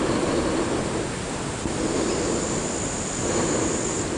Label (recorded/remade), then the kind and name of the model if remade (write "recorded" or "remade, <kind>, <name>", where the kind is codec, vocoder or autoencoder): recorded